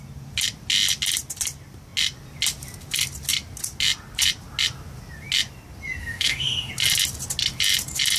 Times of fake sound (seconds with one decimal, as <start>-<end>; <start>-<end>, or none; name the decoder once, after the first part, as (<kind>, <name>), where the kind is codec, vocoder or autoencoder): 6.0-6.7 (autoencoder, DAC-VAE)

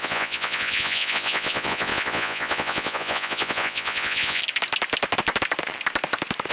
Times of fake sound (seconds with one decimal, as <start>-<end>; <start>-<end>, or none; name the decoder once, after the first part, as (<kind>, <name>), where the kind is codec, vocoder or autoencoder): 0.0-4.4 (vocoder, Vocos)

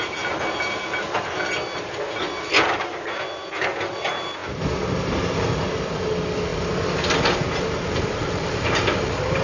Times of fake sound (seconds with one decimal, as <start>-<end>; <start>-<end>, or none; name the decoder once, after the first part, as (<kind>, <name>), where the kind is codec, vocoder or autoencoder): 6.5-9.4 (vocoder, BigVGAN v2)

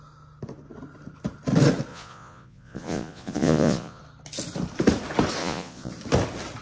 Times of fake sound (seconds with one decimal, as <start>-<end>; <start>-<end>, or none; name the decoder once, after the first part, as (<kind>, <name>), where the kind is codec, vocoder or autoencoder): 1.9-4.0 (vocoder, Vocos); 5.4-5.9

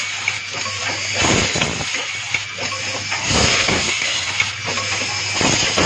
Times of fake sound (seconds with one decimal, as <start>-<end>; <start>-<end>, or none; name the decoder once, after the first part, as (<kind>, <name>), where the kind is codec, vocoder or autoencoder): 3.2-4.3 (codec, SNAC)

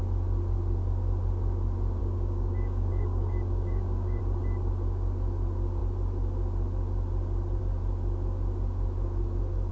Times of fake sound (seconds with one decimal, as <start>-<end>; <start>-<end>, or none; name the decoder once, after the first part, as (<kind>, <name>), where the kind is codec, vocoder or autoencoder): 2.0-4.2 (codec, DAC)